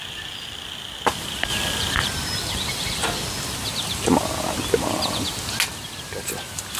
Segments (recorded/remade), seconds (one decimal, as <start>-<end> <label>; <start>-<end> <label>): 0.0-6.8 recorded